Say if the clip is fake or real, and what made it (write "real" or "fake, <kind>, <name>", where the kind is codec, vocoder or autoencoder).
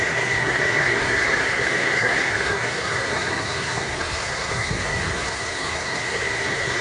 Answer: fake, codec, SNAC